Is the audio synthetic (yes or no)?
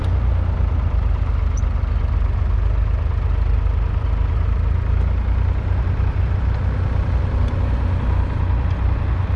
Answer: no